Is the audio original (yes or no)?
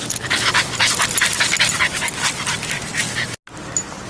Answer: yes